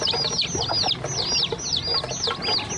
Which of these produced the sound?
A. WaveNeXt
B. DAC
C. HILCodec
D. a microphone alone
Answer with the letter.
D